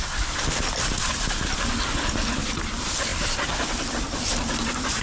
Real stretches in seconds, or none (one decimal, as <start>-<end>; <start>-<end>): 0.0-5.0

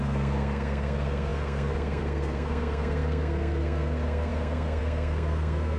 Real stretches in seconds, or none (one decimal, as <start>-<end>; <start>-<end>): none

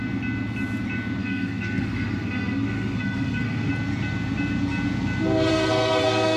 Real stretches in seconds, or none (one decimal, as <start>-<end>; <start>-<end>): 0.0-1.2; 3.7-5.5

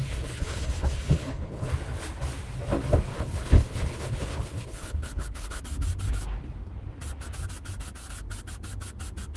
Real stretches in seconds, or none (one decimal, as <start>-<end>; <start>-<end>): 1.7-3.1; 5.6-9.4

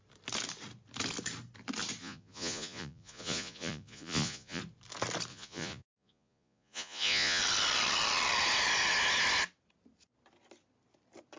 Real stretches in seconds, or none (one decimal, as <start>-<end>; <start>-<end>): 0.0-2.0; 4.6-5.3; 7.4-11.4